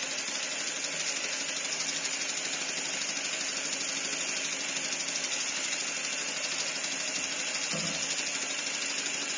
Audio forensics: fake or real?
real